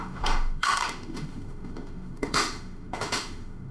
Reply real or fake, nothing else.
fake